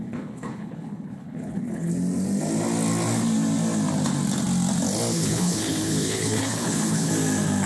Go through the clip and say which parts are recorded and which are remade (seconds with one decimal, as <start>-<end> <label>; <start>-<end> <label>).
0.0-1.9 remade; 1.9-5.1 recorded; 5.1-7.1 remade; 7.1-7.7 recorded